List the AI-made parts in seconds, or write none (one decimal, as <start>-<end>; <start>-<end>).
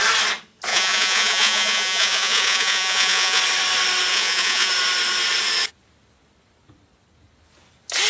0.7-3.4; 4.1-4.7